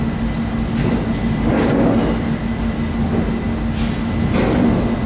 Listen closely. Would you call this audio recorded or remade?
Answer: recorded